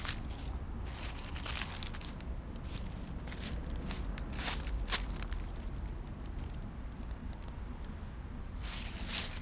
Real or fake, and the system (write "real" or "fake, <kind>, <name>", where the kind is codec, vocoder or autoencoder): real